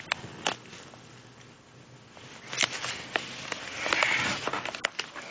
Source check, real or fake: real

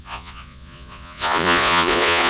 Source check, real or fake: fake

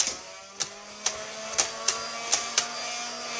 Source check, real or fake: real